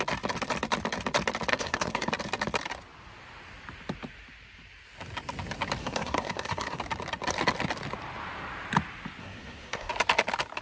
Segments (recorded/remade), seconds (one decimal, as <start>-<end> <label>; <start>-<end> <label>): 0.0-1.5 recorded; 1.5-2.1 remade; 2.1-5.8 recorded; 5.8-6.8 remade; 6.8-9.2 recorded; 9.2-9.9 remade; 9.9-10.6 recorded